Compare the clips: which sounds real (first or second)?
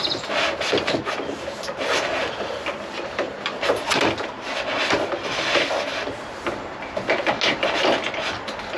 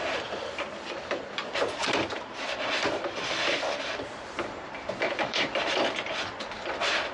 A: first